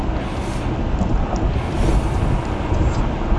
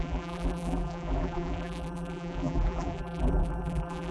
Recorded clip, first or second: first